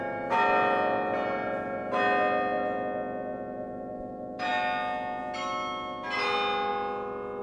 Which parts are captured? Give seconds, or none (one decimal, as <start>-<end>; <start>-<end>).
0.0-7.4